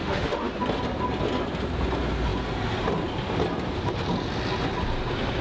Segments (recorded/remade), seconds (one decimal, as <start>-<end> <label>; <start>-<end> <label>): 0.0-0.5 remade; 0.5-5.4 recorded